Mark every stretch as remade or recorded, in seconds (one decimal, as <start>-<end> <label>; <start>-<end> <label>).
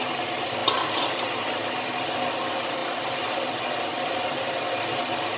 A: 0.0-5.4 recorded